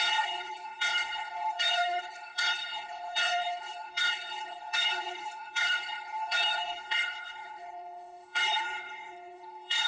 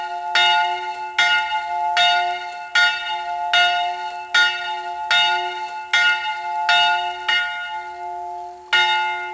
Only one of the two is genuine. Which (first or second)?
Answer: second